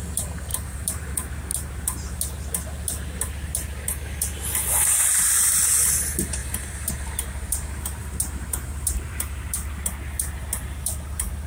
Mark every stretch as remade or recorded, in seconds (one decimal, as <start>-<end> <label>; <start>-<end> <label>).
0.0-0.5 recorded; 0.5-1.1 remade; 1.1-6.4 recorded; 6.4-6.9 remade; 6.9-8.0 recorded; 8.0-9.7 remade; 9.7-11.5 recorded